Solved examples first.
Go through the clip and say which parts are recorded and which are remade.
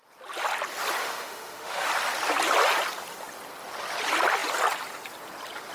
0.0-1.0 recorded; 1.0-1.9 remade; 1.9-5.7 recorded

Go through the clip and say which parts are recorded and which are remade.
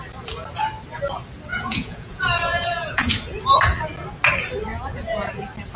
0.0-1.5 recorded; 1.5-3.1 remade; 3.1-4.7 recorded; 4.7-5.3 remade; 5.3-5.8 recorded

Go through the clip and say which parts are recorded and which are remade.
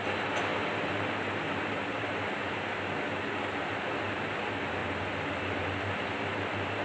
0.0-6.8 recorded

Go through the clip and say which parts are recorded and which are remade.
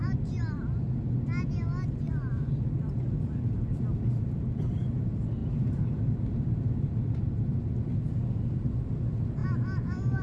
0.0-5.4 recorded; 5.4-6.0 remade; 6.0-10.2 recorded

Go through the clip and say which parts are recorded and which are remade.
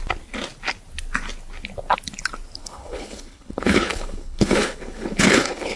0.0-2.6 recorded; 2.6-5.8 remade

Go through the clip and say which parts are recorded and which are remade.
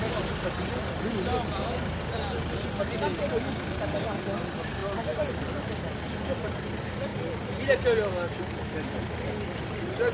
0.0-3.1 recorded; 3.1-3.8 remade; 3.8-10.1 recorded